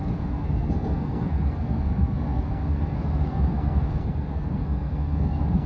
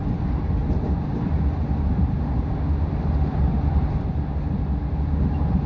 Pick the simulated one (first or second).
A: first